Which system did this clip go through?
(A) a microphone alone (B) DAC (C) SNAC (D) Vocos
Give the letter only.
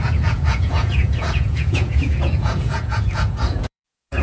D